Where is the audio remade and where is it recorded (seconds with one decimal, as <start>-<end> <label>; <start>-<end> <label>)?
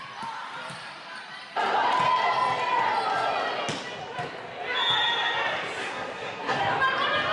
0.0-5.8 recorded; 5.8-6.6 remade; 6.6-7.3 recorded